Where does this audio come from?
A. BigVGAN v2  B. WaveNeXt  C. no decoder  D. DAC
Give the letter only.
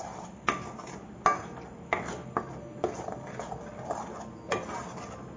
C